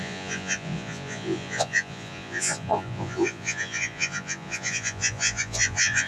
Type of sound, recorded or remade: remade